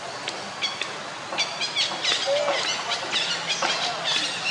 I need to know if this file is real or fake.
real